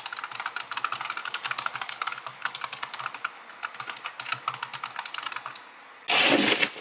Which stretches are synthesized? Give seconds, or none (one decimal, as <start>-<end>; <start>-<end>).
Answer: 1.2-3.0